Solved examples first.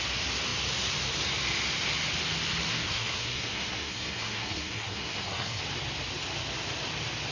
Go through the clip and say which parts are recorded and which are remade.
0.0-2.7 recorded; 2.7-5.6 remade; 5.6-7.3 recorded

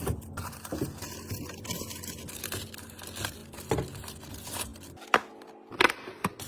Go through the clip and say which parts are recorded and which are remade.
0.0-6.5 recorded